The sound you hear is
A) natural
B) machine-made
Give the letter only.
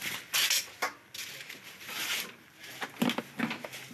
A